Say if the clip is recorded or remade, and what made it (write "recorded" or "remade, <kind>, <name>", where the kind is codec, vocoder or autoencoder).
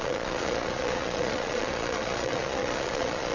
remade, vocoder, Vocos